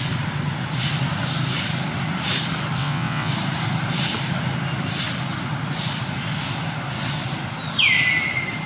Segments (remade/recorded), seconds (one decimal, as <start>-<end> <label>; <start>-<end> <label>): 0.0-2.8 recorded; 2.8-3.3 remade; 3.3-8.7 recorded